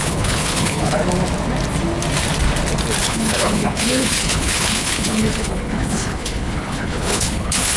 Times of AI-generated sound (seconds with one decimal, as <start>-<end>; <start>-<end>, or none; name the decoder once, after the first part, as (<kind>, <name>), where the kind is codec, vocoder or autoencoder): 0.0-1.0 (codec, HILCodec); 3.0-7.8